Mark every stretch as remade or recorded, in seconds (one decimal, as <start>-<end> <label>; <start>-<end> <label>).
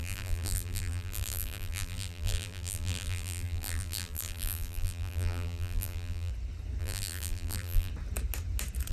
0.0-6.3 remade; 6.3-6.8 recorded; 6.8-7.9 remade; 7.9-8.9 recorded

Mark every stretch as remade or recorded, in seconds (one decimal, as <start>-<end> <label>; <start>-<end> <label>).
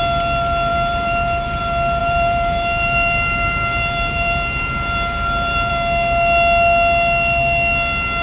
0.0-0.7 recorded; 0.7-1.6 remade; 1.6-2.0 recorded; 2.0-5.7 remade; 5.7-8.2 recorded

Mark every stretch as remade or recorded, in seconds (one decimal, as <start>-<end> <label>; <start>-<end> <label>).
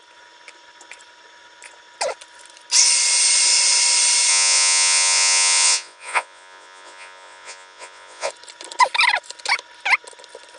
0.0-4.3 recorded; 4.3-8.3 remade; 8.3-10.6 recorded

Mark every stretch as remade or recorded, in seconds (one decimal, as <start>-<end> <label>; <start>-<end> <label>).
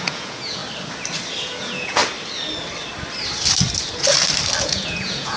0.0-0.6 remade; 0.6-1.4 recorded; 1.4-2.0 remade; 2.0-4.6 recorded; 4.6-5.4 remade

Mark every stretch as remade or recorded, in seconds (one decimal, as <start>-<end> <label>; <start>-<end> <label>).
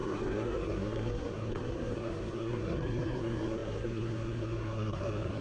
0.0-5.4 remade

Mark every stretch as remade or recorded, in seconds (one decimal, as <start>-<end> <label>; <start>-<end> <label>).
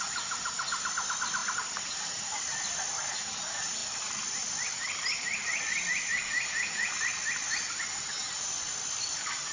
0.0-3.8 recorded; 3.8-5.8 remade; 5.8-9.5 recorded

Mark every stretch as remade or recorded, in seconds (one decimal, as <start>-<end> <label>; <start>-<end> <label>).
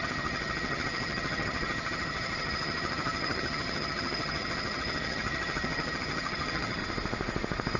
0.0-6.8 remade; 6.8-7.8 recorded